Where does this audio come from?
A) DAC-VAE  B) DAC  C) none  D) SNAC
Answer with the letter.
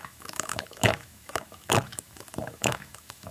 A